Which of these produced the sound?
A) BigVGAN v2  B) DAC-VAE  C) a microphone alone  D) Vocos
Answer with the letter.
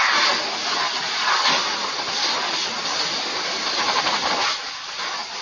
C